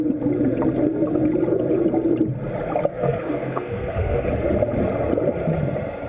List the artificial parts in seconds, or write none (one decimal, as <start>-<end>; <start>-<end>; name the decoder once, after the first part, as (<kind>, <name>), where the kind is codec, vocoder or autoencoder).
2.9-4.3 (codec, SNAC)